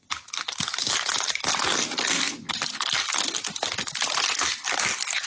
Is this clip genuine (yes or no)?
yes